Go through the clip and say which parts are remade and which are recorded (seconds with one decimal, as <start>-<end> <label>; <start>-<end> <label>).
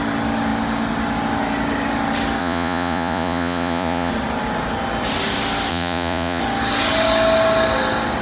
0.0-2.4 recorded; 2.4-4.1 remade; 4.1-5.7 recorded; 5.7-6.4 remade; 6.4-8.2 recorded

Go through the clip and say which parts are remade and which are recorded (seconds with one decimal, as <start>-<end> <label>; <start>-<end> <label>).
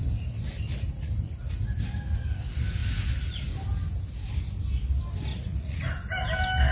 0.0-5.3 recorded; 5.3-5.8 remade; 5.8-6.7 recorded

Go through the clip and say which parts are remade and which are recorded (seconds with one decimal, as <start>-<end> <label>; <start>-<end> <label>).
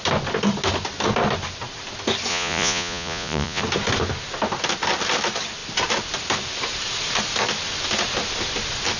0.0-2.3 recorded; 2.3-3.6 remade; 3.6-9.0 recorded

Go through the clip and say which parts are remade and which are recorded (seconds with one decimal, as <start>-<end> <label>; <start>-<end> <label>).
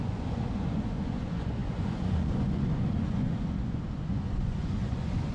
0.0-5.3 remade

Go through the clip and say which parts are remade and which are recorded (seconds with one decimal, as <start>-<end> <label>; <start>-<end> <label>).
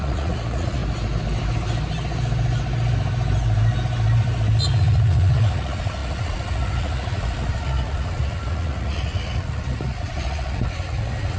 0.0-0.8 remade; 0.8-4.6 recorded; 4.6-11.4 remade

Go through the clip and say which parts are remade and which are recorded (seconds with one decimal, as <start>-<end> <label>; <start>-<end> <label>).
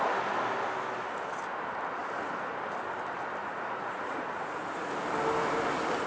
0.0-3.4 recorded; 3.4-4.9 remade; 4.9-6.1 recorded